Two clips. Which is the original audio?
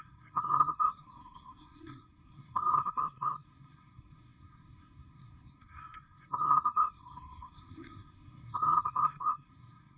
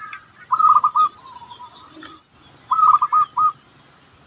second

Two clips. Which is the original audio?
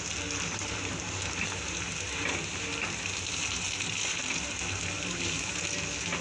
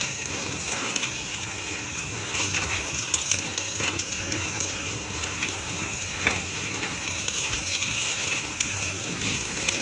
first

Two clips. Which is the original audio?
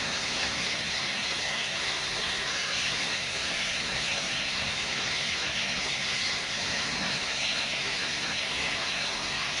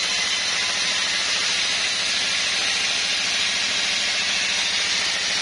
second